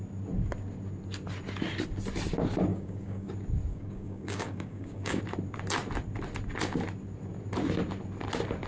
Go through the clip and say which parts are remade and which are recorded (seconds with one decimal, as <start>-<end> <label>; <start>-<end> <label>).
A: 0.0-2.7 recorded; 2.7-3.3 remade; 3.3-3.7 recorded; 3.7-5.2 remade; 5.2-8.7 recorded